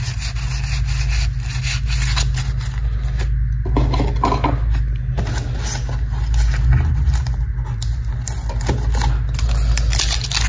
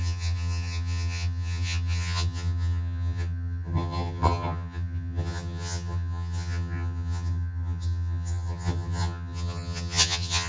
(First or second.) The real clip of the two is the first